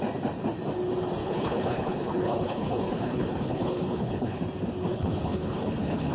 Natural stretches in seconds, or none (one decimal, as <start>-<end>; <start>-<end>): 0.0-1.2; 4.4-4.9